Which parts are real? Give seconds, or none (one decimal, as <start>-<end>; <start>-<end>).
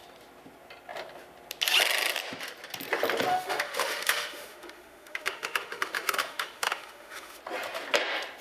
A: 0.0-3.3; 7.4-8.4